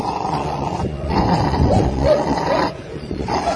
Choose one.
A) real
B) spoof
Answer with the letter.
B